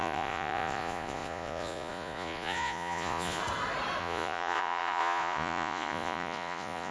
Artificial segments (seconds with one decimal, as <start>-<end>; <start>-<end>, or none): 0.0-3.4; 4.0-6.9